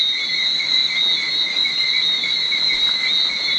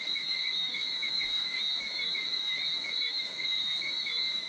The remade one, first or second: second